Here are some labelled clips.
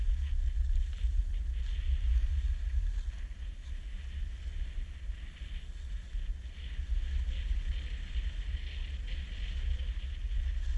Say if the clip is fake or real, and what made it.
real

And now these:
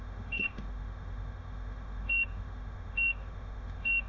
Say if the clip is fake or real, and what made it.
fake, autoencoder, DAC-VAE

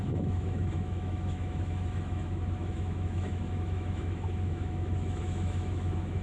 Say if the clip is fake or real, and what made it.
fake, autoencoder, DAC-VAE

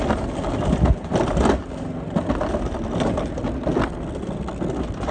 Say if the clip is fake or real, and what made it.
real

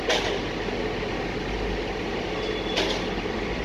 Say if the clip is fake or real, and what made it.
real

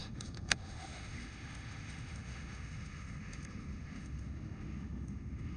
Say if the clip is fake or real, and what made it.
fake, autoencoder, DAC-VAE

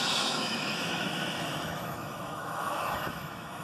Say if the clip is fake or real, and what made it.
fake, autoencoder, DAC-VAE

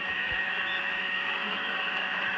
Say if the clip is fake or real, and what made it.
fake, autoencoder, DAC-VAE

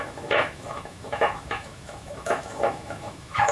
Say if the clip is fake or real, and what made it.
fake, autoencoder, DAC-VAE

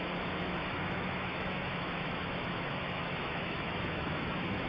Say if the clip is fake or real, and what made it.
fake, autoencoder, DAC-VAE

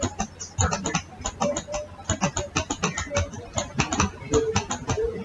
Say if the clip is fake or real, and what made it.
real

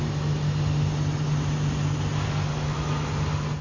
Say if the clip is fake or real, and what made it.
real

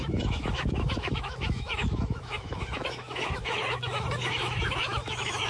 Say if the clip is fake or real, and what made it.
fake, autoencoder, DAC-VAE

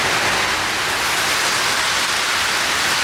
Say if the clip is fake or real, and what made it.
real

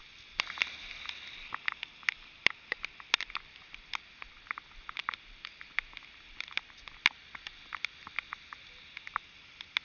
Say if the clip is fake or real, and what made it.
real